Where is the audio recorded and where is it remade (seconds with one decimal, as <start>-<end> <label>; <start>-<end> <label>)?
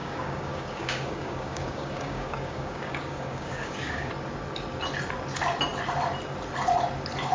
0.0-4.1 remade; 4.1-7.3 recorded